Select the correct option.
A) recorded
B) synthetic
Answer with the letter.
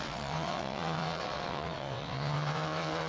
B